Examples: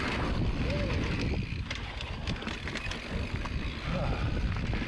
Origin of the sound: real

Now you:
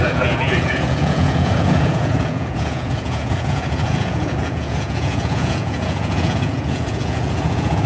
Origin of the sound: fake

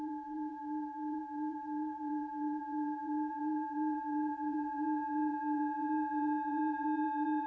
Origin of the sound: fake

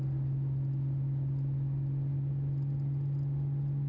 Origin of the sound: real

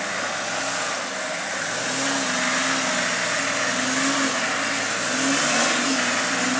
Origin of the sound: real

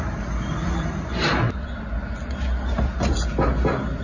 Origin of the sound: real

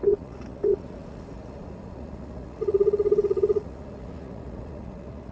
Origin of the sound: fake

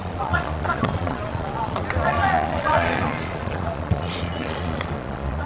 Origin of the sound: fake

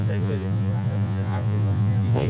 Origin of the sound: fake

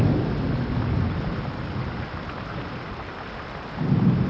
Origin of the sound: real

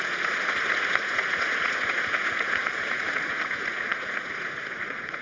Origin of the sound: fake